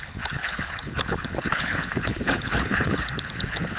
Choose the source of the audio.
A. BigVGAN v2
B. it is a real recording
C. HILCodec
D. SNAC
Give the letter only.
C